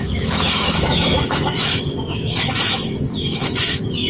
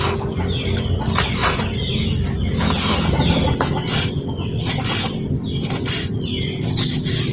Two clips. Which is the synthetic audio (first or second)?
first